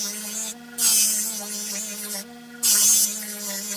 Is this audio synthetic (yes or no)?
no